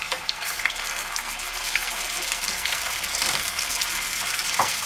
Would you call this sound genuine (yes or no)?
no